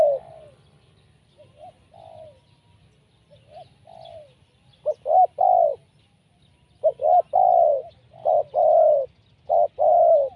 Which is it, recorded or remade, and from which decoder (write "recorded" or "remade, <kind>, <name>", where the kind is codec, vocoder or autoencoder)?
recorded